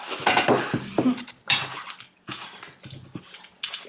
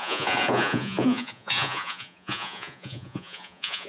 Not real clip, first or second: second